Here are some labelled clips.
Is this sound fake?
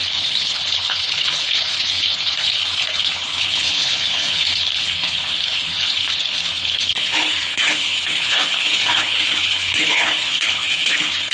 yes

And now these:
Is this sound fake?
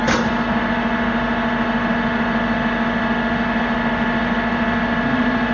no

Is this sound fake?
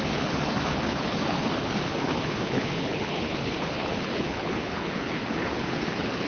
yes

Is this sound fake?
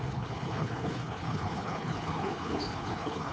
yes